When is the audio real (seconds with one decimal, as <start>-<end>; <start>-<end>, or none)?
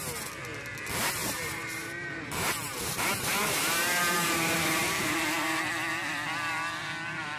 0.0-1.2; 5.6-7.4